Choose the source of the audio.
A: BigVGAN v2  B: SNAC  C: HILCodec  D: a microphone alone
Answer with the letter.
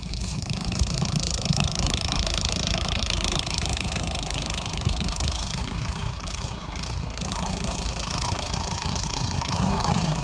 B